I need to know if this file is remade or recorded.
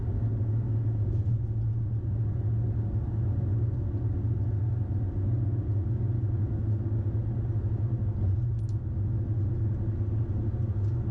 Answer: recorded